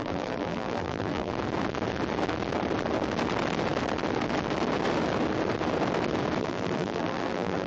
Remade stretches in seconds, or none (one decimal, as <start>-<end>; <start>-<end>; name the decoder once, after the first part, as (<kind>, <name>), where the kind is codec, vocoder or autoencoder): 0.0-1.3 (vocoder, BigVGAN v2); 6.4-7.7